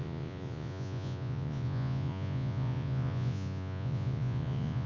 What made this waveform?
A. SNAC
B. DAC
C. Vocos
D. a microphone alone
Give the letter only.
C